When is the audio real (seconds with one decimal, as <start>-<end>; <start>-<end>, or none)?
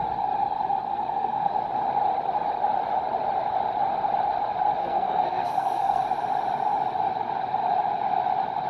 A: 0.0-0.9; 1.5-4.8; 6.0-8.7